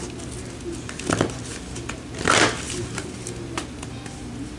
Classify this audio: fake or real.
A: real